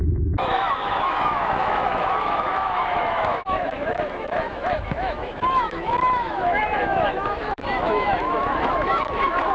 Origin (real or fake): fake